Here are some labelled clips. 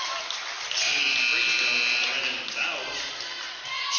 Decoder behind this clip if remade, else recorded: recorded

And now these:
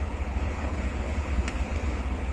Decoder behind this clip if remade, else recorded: remade, codec, HILCodec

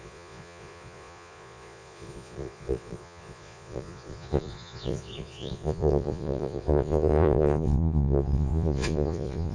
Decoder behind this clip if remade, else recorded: remade, vocoder, Vocos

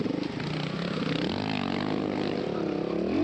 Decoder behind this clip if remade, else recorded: recorded